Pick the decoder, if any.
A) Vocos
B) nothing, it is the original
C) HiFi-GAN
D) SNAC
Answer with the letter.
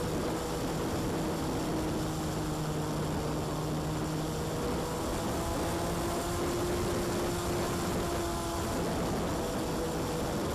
B